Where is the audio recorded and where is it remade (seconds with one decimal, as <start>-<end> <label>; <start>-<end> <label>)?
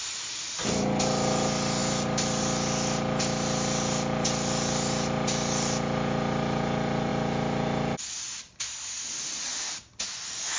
0.0-1.8 recorded; 1.8-2.4 remade; 2.4-10.6 recorded